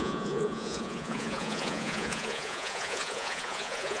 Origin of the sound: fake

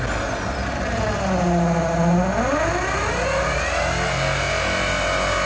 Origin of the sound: real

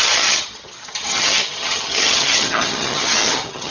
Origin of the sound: fake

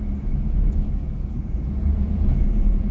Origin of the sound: fake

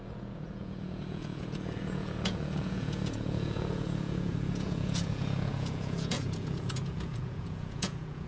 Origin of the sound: fake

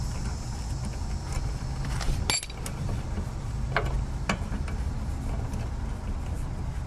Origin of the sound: real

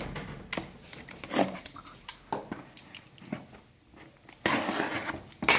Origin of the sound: real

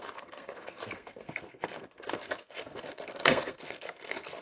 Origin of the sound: fake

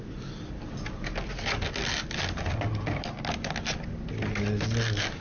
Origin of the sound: real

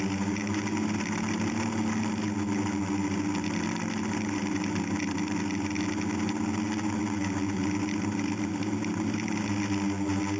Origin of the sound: real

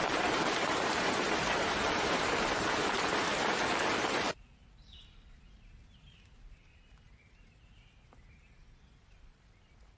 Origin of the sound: fake